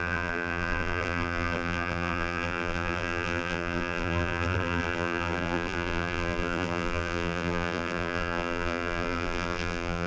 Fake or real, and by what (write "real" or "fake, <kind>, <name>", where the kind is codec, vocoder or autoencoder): fake, vocoder, BigVGAN v2